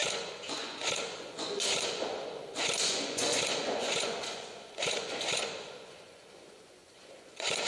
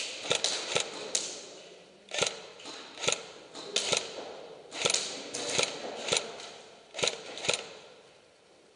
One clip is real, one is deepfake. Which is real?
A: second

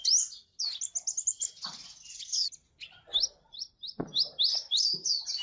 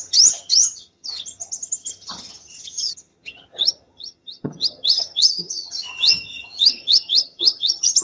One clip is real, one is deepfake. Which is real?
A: first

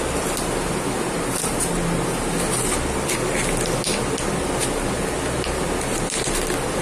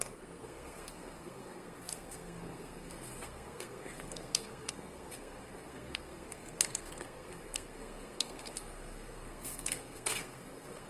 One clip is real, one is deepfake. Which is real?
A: first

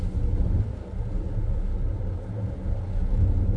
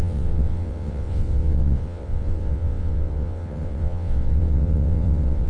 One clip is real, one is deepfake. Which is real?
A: first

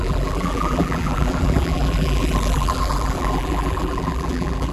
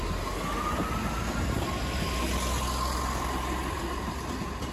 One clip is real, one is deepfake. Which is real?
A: second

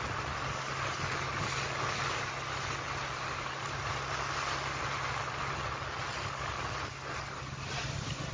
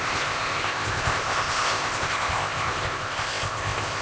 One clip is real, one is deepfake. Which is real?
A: first